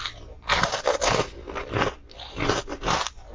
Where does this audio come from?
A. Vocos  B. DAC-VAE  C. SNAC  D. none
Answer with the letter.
D